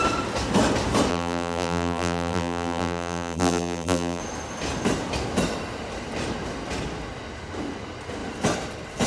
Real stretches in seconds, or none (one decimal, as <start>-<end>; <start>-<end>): 0.0-1.1; 4.2-9.1